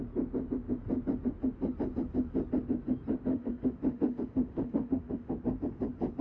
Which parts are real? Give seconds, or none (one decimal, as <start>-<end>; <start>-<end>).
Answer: 0.0-3.3; 5.3-6.2